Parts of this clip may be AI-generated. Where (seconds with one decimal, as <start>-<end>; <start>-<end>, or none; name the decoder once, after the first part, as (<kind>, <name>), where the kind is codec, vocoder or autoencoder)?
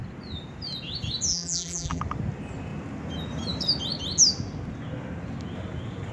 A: 1.3-2.0 (vocoder, BigVGAN v2)